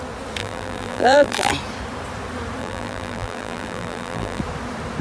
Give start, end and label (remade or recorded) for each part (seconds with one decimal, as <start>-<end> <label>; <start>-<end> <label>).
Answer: 0.0-0.4 recorded; 0.4-1.5 remade; 1.5-2.6 recorded; 2.6-4.4 remade; 4.4-5.0 recorded